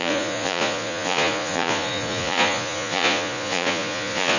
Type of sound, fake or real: fake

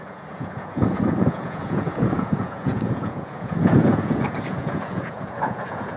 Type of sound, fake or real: fake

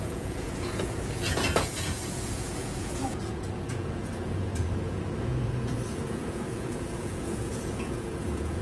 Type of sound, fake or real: fake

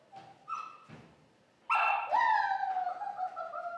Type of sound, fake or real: real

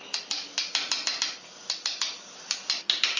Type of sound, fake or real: real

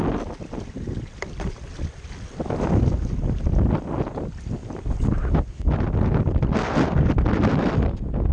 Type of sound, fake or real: real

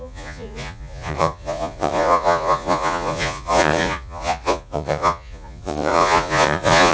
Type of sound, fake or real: fake